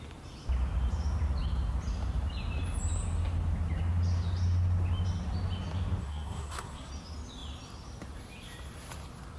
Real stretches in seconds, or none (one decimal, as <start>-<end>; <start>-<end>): 0.0-6.0; 6.9-9.4